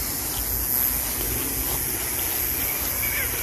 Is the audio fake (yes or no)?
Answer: no